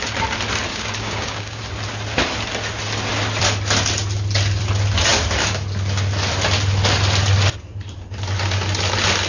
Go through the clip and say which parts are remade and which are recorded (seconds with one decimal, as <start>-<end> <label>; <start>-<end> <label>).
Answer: 0.0-0.7 recorded; 0.7-1.6 remade; 1.6-9.3 recorded